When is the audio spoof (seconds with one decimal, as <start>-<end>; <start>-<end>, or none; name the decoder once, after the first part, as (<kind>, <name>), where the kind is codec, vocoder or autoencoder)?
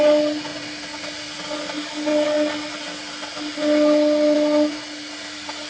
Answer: none